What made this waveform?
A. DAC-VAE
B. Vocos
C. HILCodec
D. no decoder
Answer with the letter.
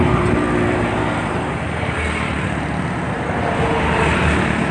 D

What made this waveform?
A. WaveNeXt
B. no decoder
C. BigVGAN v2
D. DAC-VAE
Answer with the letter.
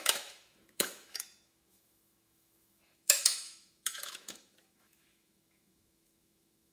D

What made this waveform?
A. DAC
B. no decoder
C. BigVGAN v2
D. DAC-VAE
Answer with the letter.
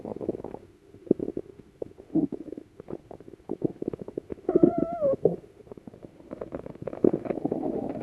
D